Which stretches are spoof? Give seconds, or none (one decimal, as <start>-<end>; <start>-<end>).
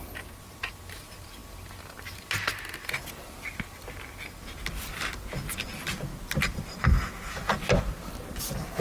none